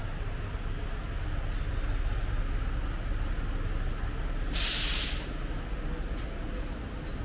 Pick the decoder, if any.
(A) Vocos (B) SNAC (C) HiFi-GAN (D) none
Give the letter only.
D